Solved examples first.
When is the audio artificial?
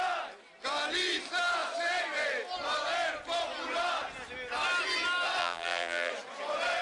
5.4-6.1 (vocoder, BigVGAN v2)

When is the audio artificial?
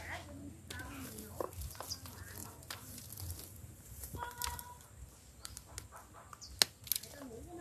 2.4-3.0 (vocoder, BigVGAN v2); 3.6-4.7